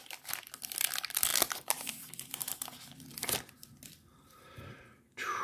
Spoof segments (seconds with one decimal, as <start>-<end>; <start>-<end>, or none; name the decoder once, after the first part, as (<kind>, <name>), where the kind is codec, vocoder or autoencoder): 4.1-4.8 (vocoder, BigVGAN v2)